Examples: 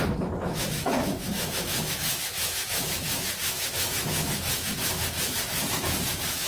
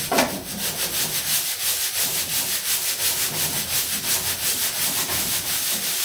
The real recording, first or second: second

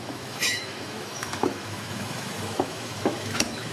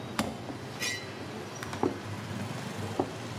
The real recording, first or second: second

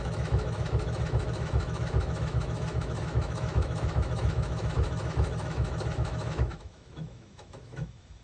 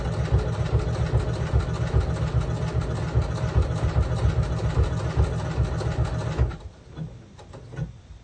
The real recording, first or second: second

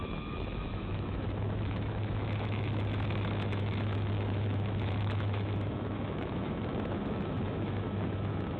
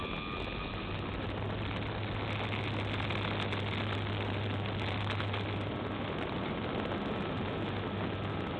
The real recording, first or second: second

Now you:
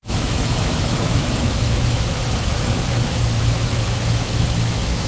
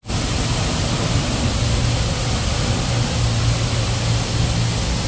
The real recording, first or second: second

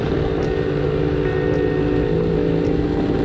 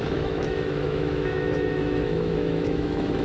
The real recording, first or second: first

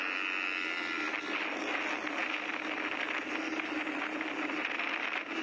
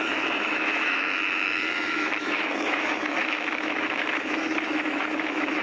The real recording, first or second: first